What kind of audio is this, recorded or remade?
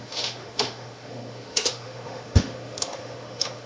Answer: remade